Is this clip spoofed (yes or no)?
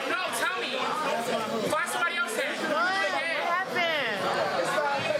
no